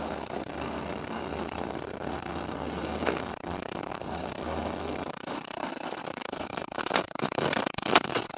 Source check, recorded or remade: remade